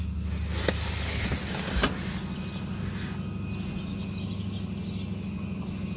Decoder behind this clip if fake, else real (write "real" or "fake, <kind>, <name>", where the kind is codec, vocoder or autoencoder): real